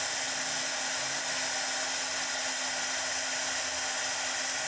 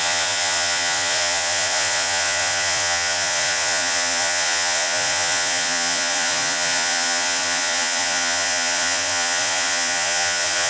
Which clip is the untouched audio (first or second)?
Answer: first